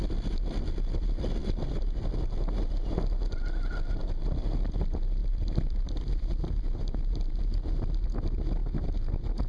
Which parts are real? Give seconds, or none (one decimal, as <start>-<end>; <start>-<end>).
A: 0.0-5.2; 6.5-9.5

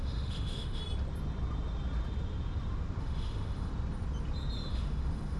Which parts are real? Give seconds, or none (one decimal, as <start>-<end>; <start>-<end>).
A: 0.8-3.0; 3.7-4.7

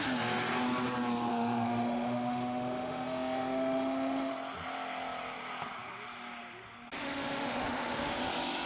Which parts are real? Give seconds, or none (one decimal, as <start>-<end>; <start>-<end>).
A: 0.0-1.3; 4.3-7.0; 8.1-8.7